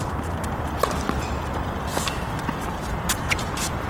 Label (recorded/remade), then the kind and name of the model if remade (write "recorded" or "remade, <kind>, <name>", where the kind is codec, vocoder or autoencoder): remade, vocoder, BigVGAN v2